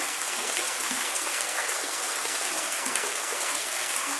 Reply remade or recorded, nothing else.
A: remade